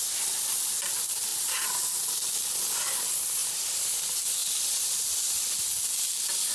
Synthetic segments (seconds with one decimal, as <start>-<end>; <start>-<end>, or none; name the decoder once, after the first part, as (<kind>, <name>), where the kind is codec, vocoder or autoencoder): 0.0-0.8 (vocoder, BigVGAN v2); 3.4-4.0